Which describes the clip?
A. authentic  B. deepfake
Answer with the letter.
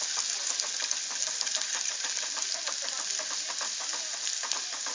A